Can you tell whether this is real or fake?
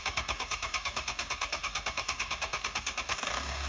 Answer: fake